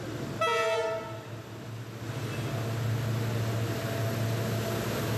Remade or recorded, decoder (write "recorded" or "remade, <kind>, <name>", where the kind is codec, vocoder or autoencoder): recorded